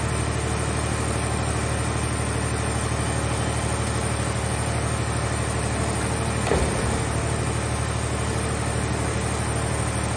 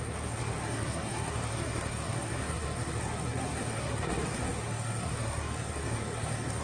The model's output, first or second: second